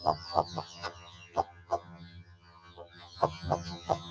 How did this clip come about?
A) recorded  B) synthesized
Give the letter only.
B